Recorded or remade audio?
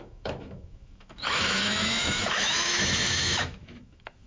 remade